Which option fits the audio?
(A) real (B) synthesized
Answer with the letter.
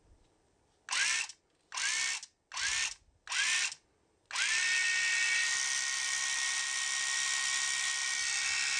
A